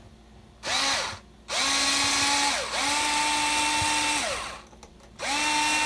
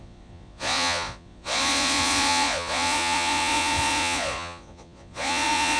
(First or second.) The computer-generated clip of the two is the second